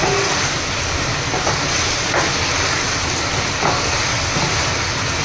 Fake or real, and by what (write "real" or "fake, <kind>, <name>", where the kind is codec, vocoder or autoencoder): real